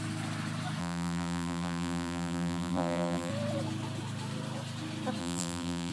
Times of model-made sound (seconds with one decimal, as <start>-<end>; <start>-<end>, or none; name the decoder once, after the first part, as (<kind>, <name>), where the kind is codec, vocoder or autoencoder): 0.8-3.3 (vocoder, BigVGAN v2); 5.2-5.9